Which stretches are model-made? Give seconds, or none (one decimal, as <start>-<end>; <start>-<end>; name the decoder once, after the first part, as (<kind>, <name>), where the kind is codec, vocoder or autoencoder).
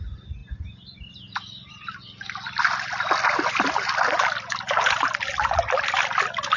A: none